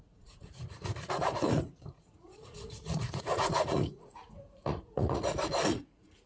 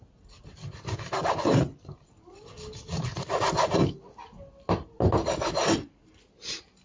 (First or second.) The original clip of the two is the second